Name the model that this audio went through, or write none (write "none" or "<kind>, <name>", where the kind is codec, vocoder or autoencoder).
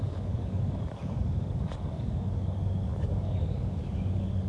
codec, DAC